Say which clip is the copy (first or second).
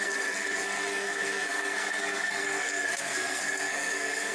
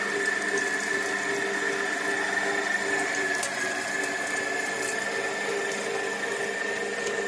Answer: first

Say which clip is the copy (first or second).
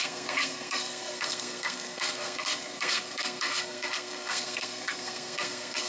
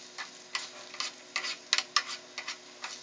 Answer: first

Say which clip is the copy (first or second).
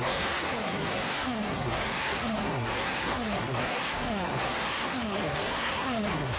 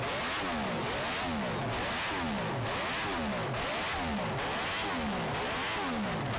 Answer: first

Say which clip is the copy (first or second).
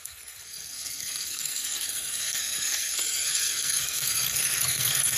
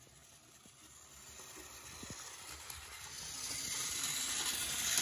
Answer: first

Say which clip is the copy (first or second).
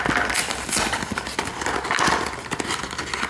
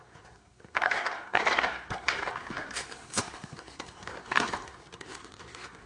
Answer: second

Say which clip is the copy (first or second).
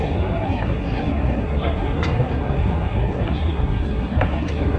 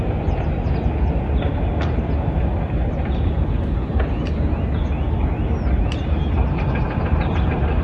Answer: first